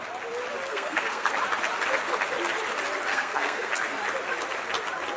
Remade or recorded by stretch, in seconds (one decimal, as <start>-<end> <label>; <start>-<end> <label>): 0.0-0.7 recorded; 0.7-1.3 remade; 1.3-3.1 recorded; 3.1-3.7 remade; 3.7-5.2 recorded